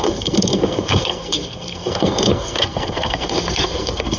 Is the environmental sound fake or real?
fake